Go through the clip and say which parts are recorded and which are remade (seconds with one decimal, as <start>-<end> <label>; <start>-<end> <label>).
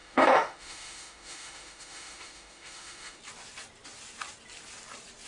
0.0-3.2 remade; 3.2-5.3 recorded